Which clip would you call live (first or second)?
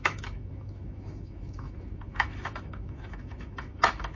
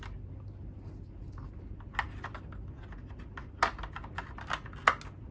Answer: second